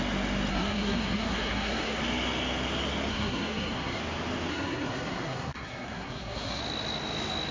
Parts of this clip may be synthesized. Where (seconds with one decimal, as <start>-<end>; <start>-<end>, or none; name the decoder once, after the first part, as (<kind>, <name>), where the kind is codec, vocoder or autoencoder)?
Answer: 0.5-2.0 (codec, SNAC); 3.1-4.0; 4.5-6.6